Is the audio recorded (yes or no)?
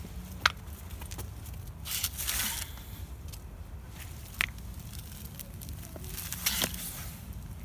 yes